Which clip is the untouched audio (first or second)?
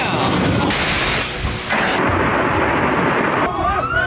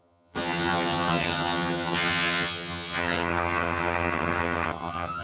first